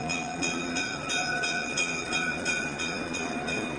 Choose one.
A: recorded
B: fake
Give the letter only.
B